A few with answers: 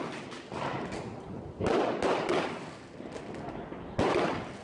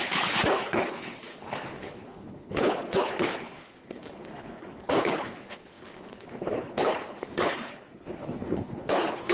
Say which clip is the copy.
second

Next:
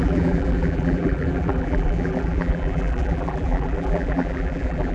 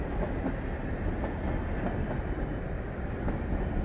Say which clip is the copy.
first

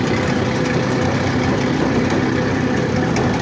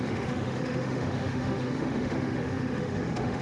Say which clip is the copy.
second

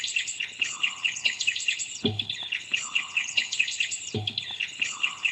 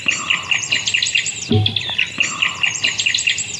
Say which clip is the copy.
first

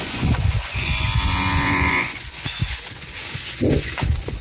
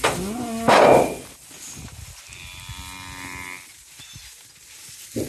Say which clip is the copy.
first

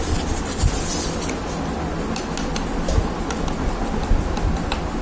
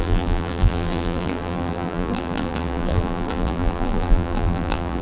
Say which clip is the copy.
second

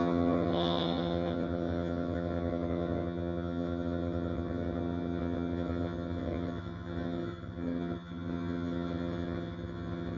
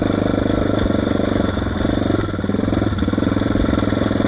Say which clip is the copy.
first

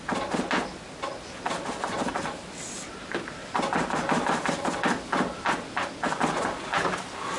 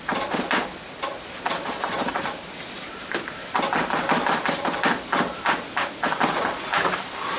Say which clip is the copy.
second